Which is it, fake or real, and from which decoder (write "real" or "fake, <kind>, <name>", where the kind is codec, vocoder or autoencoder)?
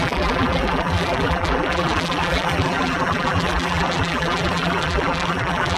fake, vocoder, BigVGAN v2